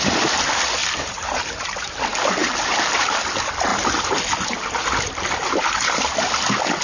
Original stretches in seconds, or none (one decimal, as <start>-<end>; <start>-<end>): 0.0-0.8; 2.0-2.4; 3.2-6.8